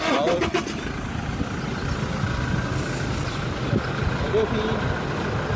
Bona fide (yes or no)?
yes